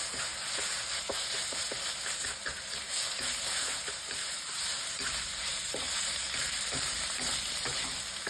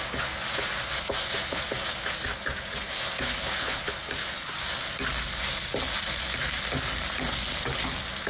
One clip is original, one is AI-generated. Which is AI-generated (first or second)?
first